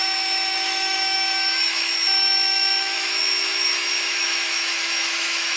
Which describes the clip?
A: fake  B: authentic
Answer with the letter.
A